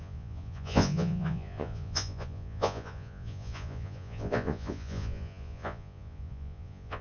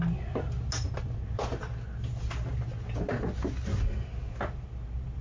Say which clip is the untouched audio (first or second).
second